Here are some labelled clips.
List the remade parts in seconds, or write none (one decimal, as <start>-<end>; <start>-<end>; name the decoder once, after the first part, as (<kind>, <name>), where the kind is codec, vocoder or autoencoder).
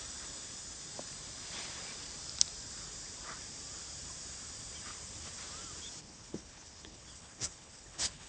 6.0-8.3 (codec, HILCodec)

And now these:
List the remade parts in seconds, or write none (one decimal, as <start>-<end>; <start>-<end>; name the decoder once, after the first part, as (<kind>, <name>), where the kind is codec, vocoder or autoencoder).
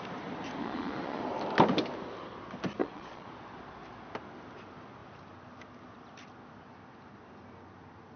0.6-1.2 (vocoder, Vocos); 2.8-3.3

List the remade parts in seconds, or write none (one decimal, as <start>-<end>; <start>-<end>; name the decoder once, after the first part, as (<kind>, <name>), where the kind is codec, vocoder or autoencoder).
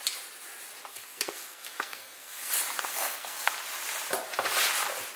0.9-2.5 (codec, SNAC); 2.9-3.5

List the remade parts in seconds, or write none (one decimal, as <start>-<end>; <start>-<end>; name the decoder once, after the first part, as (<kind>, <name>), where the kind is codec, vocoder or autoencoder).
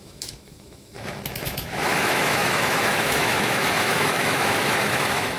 0.0-5.4 (autoencoder, DAC-VAE)